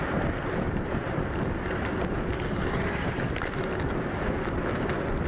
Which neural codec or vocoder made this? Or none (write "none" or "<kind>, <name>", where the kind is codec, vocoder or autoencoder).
none